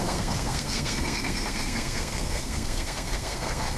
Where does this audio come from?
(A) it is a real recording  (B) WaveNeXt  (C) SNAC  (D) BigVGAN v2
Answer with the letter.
C